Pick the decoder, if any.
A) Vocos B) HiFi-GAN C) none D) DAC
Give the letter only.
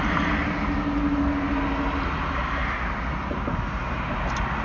C